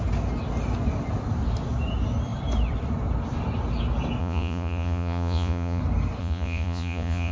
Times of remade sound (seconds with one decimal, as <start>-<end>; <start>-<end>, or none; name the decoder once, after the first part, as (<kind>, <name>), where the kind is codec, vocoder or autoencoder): 4.2-5.8 (vocoder, Vocos); 6.2-7.3